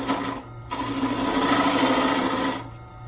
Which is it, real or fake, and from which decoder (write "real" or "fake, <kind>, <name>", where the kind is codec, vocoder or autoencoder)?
real